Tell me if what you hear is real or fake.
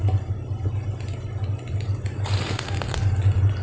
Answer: real